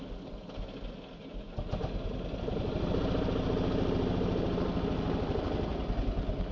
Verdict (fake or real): real